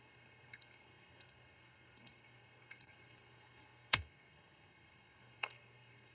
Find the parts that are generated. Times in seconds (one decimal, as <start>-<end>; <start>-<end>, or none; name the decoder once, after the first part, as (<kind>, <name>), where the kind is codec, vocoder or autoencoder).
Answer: 0.0-6.1 (codec, SNAC)